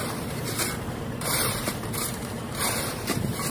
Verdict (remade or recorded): remade